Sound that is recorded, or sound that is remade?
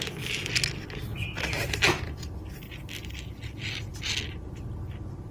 recorded